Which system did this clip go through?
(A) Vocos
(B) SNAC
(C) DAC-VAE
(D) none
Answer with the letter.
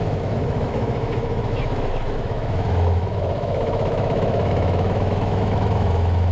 C